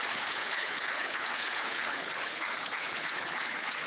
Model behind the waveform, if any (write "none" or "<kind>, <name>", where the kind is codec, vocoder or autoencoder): codec, HILCodec